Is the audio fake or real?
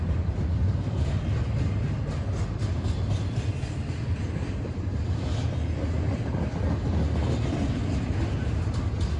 real